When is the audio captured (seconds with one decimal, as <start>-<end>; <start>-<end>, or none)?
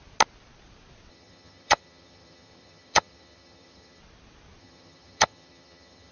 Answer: 0.0-1.1; 4.0-4.6